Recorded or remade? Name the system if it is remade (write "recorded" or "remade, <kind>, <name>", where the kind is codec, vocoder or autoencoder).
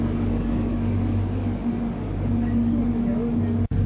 remade, codec, DAC